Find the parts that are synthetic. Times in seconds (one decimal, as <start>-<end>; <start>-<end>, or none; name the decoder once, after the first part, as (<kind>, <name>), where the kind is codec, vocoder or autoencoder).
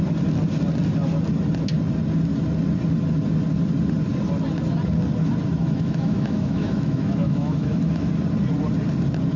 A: 5.6-8.1 (autoencoder, DAC-VAE)